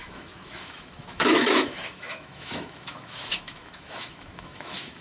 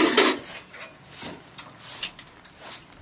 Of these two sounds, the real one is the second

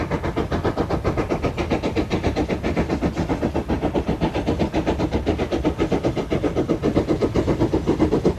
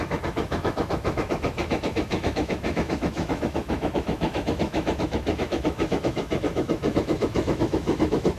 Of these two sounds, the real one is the first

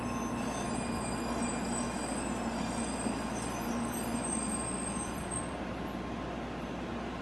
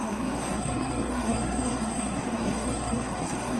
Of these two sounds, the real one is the first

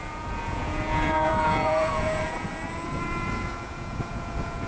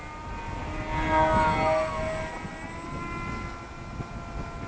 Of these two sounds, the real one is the second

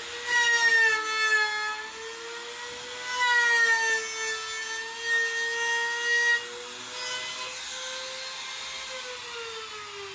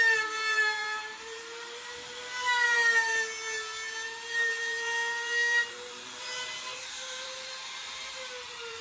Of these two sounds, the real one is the first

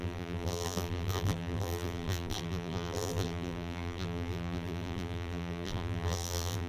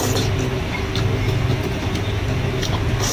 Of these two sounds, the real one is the second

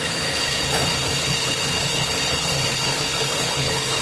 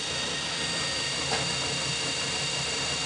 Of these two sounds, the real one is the second